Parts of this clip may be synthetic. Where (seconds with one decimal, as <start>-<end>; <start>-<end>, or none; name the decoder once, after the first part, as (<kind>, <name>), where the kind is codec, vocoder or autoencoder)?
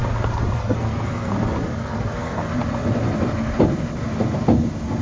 0.6-1.3 (codec, SNAC); 1.8-2.4